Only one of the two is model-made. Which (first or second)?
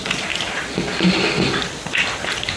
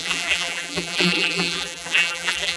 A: second